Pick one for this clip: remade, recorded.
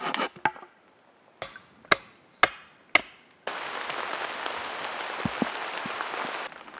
recorded